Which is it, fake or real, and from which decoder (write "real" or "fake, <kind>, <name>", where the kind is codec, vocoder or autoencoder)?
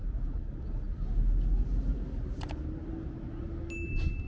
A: real